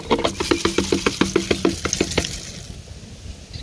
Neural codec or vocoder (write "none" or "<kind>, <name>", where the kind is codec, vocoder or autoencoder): none